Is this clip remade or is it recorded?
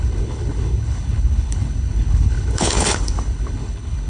remade